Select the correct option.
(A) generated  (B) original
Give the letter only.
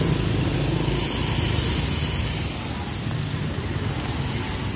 B